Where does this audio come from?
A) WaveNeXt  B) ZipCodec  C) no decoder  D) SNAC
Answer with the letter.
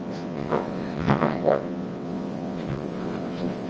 A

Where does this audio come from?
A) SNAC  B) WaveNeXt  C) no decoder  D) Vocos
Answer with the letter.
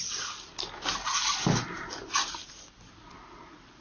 C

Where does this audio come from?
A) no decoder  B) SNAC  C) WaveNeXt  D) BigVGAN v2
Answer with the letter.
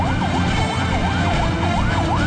A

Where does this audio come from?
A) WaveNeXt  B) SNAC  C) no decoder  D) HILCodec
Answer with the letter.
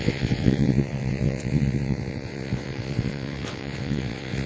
A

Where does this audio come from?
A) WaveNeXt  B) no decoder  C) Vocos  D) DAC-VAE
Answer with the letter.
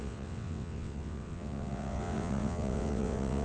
A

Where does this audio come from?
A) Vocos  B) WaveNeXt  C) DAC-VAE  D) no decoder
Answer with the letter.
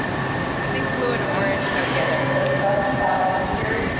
D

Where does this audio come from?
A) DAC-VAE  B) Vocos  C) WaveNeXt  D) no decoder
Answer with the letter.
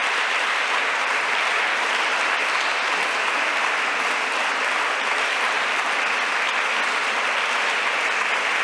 D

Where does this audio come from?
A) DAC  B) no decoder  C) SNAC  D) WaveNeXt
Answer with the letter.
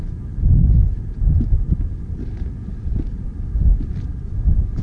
B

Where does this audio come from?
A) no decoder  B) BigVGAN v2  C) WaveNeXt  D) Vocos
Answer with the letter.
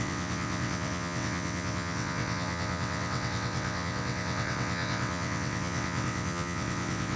C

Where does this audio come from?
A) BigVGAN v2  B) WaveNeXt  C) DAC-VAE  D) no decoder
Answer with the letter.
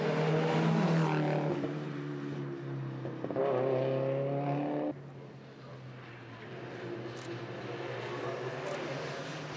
D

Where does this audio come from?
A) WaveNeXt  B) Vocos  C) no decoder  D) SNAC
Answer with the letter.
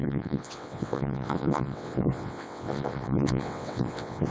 A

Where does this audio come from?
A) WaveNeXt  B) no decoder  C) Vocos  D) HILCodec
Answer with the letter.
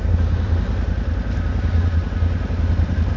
B